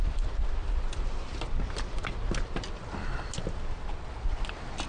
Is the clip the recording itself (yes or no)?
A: yes